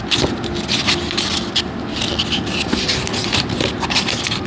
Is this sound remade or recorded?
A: recorded